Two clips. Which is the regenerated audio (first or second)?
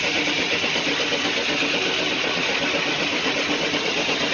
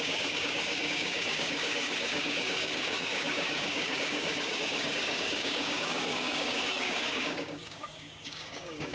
second